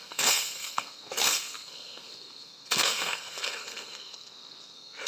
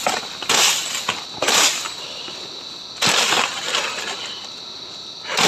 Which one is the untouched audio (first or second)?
second